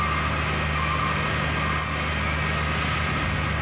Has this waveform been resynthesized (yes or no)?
no